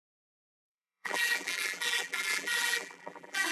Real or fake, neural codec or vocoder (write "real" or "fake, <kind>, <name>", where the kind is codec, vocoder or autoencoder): fake, vocoder, BigVGAN v2